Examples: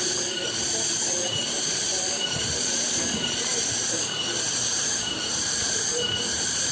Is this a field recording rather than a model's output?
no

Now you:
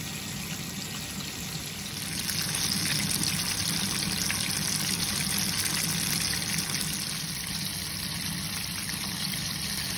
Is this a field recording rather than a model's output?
yes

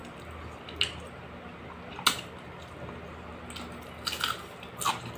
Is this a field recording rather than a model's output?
yes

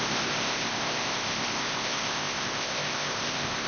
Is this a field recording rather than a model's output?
no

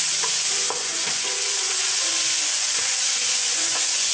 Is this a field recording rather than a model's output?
no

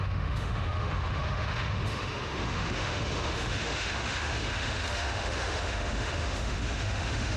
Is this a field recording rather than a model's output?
no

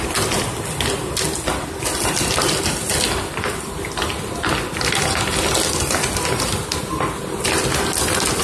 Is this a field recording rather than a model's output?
yes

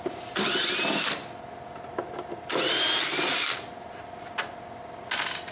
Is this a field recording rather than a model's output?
yes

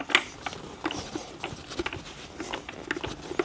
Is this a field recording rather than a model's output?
yes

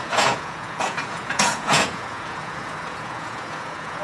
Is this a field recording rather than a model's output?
no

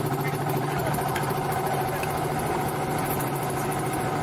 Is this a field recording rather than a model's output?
yes